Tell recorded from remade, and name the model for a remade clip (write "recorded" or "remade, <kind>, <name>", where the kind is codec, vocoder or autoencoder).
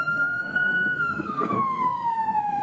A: remade, codec, SNAC